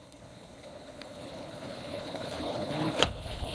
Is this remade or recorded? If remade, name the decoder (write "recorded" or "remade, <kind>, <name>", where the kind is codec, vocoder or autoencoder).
remade, codec, HILCodec